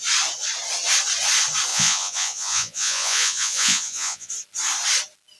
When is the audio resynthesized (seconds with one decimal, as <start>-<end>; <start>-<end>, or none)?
1.7-4.3